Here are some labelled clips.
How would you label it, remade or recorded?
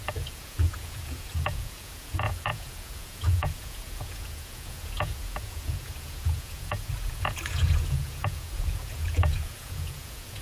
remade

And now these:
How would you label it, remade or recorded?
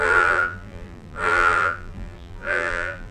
remade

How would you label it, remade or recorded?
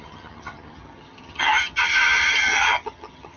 remade